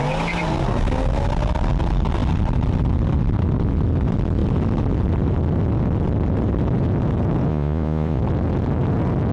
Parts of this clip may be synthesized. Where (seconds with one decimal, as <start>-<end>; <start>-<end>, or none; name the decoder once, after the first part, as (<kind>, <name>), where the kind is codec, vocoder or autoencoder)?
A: 7.5-8.2 (vocoder, Vocos)